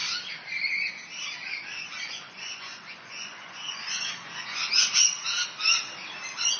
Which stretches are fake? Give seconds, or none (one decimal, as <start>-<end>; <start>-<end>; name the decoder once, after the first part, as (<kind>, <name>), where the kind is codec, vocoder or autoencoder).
1.9-4.7 (vocoder, Vocos)